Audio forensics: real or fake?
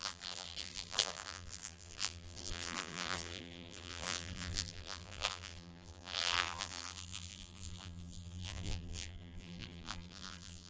fake